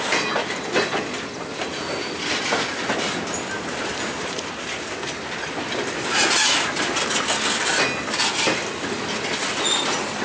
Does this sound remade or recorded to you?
recorded